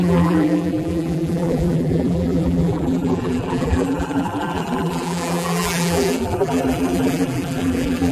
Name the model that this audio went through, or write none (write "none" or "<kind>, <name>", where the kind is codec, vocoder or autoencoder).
vocoder, BigVGAN v2